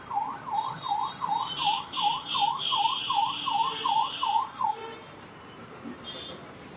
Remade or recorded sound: remade